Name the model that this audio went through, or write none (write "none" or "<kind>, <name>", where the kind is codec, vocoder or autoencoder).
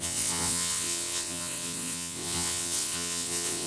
vocoder, WaveNeXt